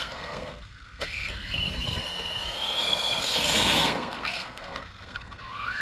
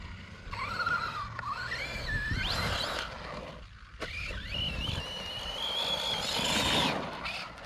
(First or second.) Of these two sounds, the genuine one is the second